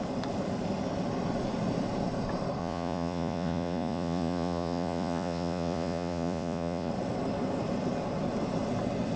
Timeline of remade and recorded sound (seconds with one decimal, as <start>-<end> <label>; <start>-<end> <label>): 0.0-2.6 recorded; 2.6-6.9 remade; 6.9-9.2 recorded